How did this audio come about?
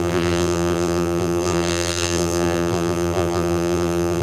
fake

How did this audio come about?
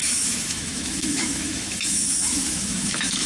fake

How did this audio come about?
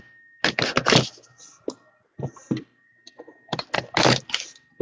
real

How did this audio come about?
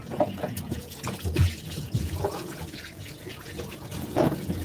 fake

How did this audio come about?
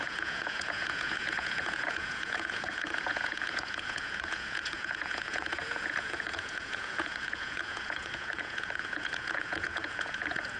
fake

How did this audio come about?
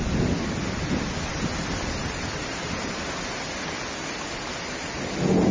real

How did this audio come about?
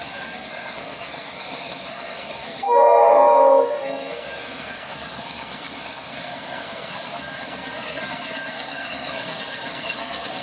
fake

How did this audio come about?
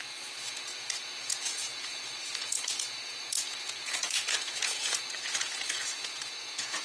fake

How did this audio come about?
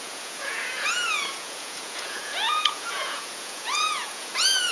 fake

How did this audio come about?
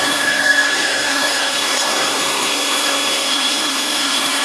fake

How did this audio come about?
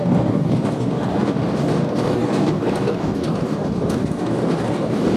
fake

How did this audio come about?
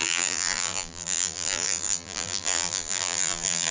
fake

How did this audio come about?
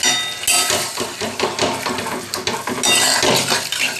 real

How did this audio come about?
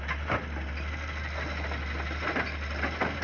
real